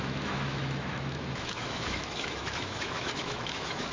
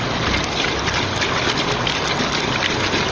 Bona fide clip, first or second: second